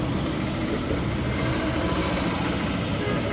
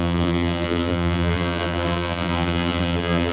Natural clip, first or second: first